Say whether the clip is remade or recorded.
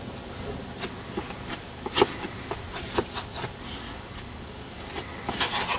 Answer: recorded